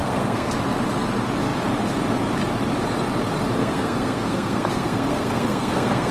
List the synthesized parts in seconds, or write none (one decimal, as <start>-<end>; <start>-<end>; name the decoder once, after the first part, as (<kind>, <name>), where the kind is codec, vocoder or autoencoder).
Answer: 0.0-0.5 (codec, SNAC); 3.6-6.1